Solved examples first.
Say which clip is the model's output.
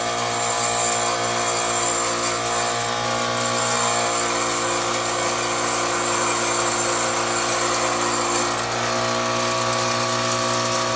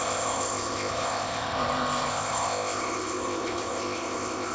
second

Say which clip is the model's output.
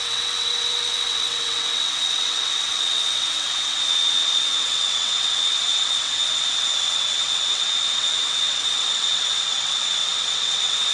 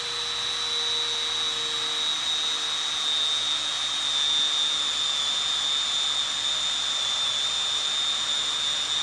first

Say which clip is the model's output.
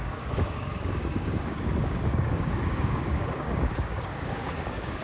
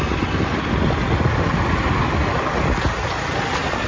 first